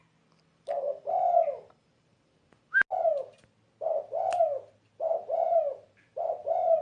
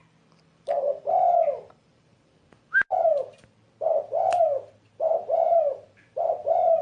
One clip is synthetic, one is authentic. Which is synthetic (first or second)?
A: second